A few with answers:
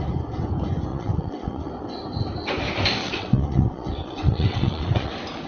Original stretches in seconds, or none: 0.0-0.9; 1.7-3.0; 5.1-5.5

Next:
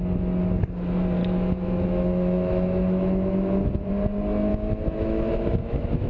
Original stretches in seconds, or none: 0.0-1.2; 3.9-4.5

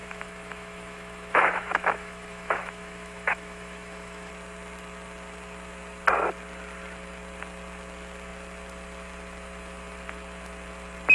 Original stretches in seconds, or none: 4.3-11.1

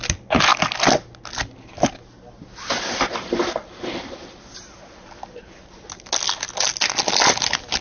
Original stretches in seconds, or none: 0.0-7.8

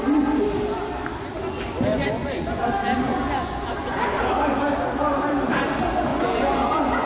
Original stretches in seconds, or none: 0.0-1.9; 2.6-3.1; 4.2-6.1

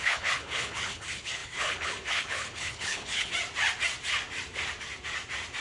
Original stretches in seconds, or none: 3.3-5.6

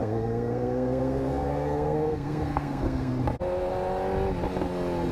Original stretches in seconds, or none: 3.1-5.1